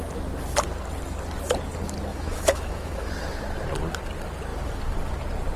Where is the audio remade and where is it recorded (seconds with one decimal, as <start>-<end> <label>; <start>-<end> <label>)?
0.0-2.1 recorded; 2.1-3.1 remade; 3.1-5.6 recorded